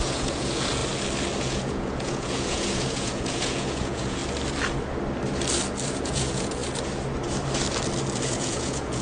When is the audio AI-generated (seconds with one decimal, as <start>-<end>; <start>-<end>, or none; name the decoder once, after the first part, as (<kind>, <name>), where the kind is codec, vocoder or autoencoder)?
0.0-0.8 (vocoder, Vocos); 1.4-4.2; 6.0-6.6; 8.3-9.0